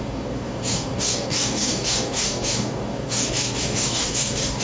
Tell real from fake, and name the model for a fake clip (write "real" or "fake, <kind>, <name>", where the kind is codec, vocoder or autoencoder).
fake, codec, DAC